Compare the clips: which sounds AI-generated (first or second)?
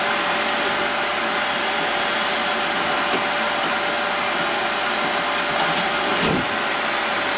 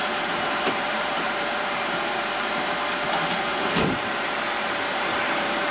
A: second